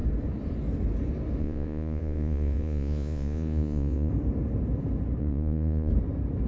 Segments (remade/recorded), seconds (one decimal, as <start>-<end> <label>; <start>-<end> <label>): 0.0-1.4 recorded; 1.4-4.1 remade; 4.1-5.2 recorded; 5.2-5.9 remade; 5.9-6.5 recorded